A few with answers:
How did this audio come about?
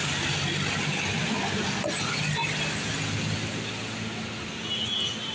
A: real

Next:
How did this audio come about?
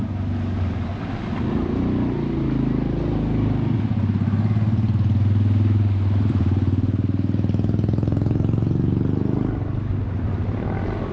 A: real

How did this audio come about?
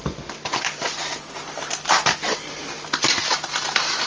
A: real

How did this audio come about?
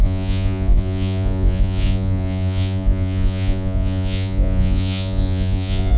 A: fake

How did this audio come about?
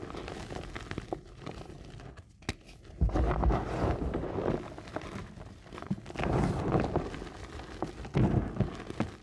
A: real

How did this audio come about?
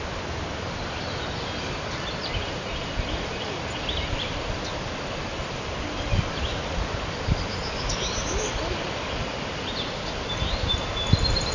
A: real